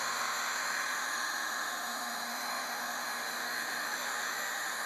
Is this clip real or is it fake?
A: fake